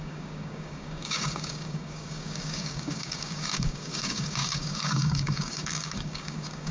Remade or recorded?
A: remade